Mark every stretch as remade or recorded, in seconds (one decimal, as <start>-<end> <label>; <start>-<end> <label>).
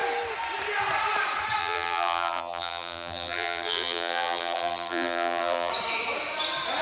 0.0-1.6 recorded; 1.6-5.7 remade; 5.7-6.8 recorded